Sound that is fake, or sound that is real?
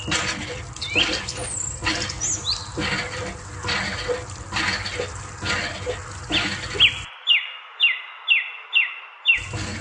real